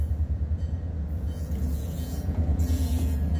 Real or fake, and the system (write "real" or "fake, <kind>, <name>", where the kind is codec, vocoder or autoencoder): fake, vocoder, Vocos